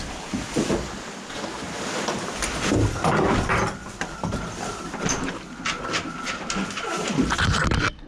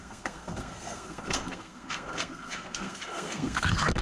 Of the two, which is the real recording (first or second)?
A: first